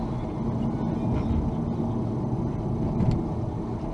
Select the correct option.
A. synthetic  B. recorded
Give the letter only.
B